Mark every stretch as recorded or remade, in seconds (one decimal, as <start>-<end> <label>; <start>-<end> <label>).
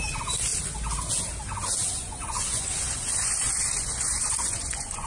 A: 0.0-1.8 recorded; 1.8-5.1 remade